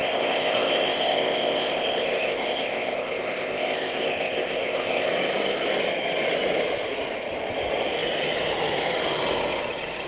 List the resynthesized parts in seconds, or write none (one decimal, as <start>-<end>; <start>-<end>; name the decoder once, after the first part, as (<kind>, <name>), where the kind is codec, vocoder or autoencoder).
0.0-5.1 (codec, ZipCodec)